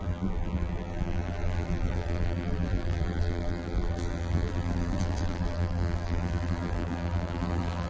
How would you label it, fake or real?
fake